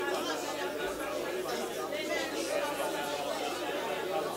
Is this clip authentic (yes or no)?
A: yes